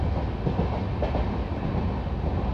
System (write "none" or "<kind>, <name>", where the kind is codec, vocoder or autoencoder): none